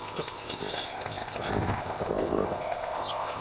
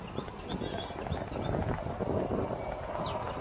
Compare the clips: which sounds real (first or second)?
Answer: second